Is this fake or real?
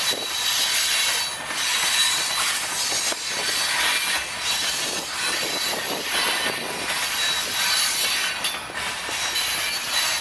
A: real